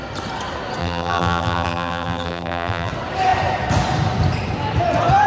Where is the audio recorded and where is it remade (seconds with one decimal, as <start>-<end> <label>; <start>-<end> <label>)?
0.0-0.8 recorded; 0.8-2.9 remade; 2.9-5.3 recorded

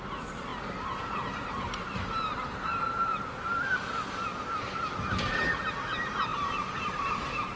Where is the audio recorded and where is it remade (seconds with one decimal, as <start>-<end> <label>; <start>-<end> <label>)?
0.0-3.1 remade; 3.1-5.8 recorded; 5.8-7.6 remade